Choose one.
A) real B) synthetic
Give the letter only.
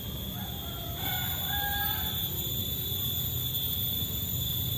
A